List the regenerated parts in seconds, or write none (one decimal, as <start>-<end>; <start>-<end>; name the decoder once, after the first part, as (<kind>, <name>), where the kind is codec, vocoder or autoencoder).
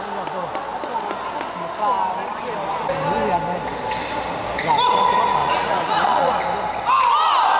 5.4-6.4 (vocoder, Vocos)